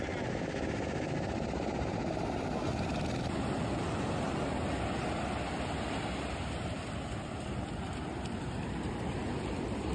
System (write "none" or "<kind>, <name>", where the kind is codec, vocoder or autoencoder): none